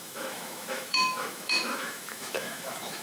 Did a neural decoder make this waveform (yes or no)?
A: yes